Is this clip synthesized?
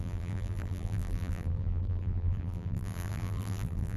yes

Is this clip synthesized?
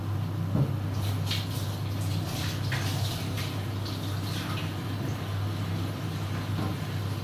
no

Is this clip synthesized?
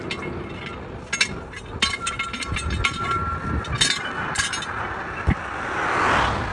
no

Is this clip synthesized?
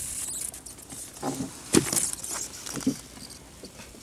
no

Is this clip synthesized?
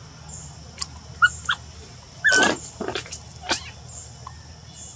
no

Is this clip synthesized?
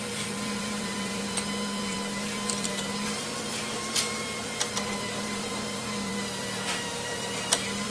yes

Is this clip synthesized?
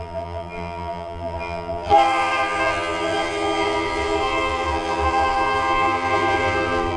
yes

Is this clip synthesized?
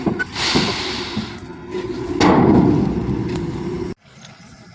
no